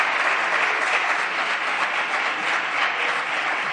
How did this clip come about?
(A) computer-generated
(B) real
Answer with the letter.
B